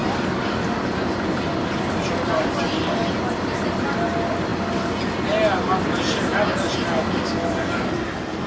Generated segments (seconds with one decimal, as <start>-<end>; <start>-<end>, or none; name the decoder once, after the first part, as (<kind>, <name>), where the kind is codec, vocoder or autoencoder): none